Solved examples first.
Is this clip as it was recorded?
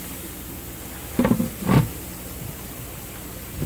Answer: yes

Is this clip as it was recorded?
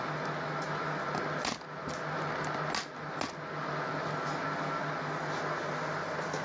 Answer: yes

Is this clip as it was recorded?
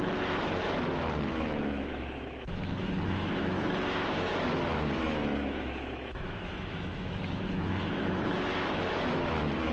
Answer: no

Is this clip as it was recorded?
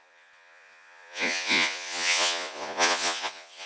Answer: no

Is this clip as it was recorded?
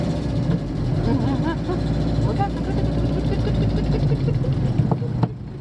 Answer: yes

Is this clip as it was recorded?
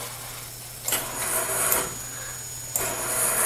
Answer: yes